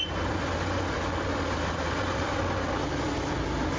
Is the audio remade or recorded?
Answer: recorded